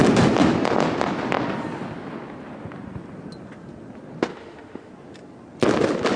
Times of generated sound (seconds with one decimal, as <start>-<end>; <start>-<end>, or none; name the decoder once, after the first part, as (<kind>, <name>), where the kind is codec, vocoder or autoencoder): 4.3-4.9 (autoencoder, DAC-VAE)